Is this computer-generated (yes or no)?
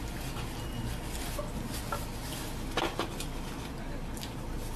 no